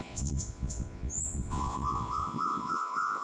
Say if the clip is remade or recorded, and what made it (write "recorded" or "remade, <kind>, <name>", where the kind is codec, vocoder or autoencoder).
remade, vocoder, Vocos